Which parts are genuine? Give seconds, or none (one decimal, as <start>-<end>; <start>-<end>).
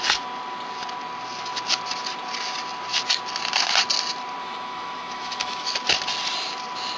0.0-4.4; 5.7-7.0